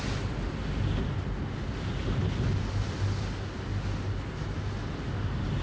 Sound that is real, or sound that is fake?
real